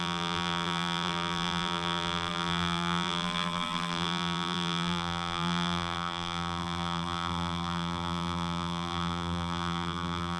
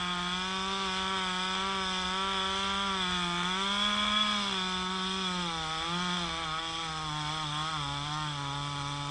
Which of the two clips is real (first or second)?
second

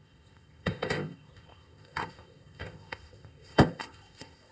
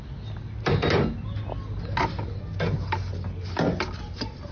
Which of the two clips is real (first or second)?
second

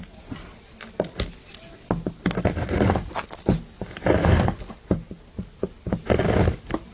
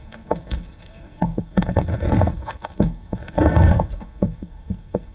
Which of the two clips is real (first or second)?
first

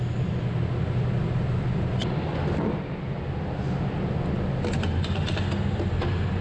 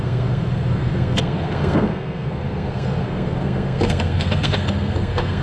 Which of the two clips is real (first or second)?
first